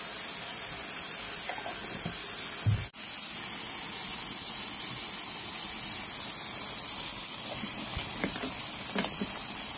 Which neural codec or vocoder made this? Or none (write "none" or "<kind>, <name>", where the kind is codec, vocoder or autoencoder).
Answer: none